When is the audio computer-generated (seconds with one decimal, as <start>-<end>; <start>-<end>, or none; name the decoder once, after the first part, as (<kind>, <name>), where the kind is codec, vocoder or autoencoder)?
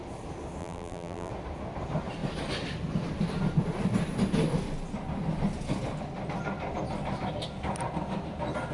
0.6-1.3 (vocoder, BigVGAN v2)